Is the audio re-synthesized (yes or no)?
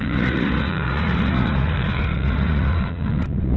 yes